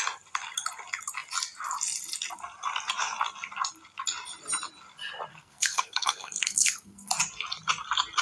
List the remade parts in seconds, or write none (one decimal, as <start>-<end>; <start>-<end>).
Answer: 5.3-7.1

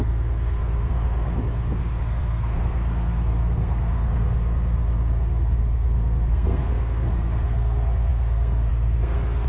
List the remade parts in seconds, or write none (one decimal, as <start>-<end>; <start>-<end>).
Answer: 0.0-9.5

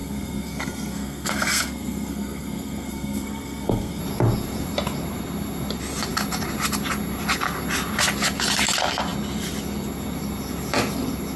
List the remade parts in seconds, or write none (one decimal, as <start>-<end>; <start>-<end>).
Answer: 0.0-4.0

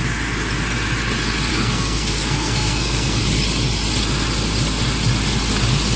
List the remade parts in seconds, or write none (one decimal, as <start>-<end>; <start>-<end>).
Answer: 1.5-3.2

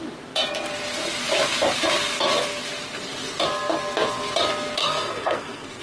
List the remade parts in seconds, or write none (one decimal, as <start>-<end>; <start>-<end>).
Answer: 4.8-5.8

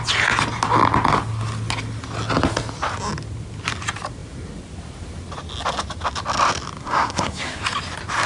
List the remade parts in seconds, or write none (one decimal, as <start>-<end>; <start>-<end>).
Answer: 6.8-7.6